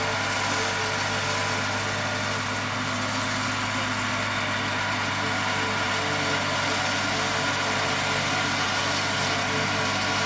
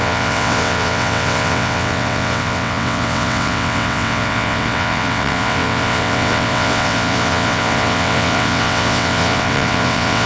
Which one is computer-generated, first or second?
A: second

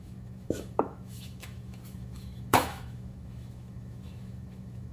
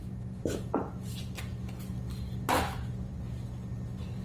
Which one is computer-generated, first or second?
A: first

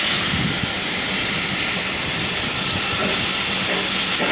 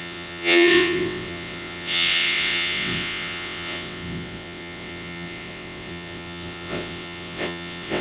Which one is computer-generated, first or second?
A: second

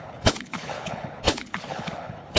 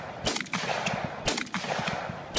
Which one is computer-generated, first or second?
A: first